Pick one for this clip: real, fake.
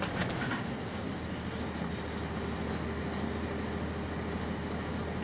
real